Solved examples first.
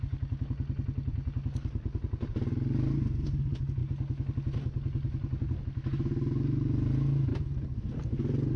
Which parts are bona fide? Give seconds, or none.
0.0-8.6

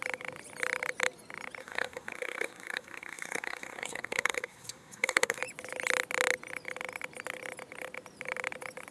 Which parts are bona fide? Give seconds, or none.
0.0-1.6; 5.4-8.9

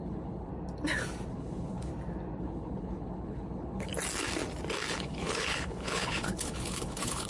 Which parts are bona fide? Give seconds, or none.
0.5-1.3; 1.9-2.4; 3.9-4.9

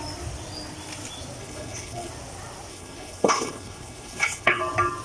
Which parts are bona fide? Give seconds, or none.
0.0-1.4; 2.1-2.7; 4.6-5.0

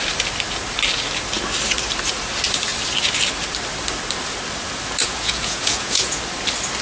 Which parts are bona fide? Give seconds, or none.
0.0-5.0; 6.2-6.8

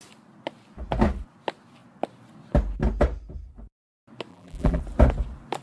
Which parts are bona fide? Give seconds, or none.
0.0-4.3; 4.8-5.6

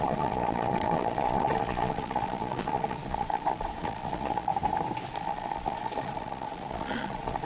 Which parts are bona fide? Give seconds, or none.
4.5-5.1

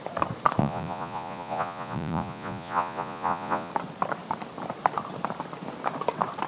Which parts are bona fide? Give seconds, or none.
0.0-0.6; 3.7-6.5